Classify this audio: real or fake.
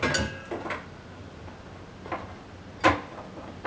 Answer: real